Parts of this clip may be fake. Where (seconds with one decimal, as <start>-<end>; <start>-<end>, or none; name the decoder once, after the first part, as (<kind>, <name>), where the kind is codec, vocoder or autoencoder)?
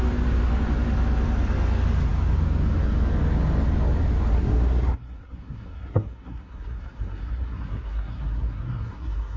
4.3-9.4 (codec, SNAC)